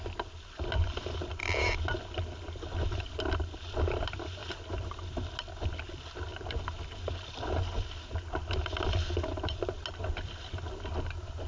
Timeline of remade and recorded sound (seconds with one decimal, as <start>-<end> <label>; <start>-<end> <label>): 0.0-11.5 recorded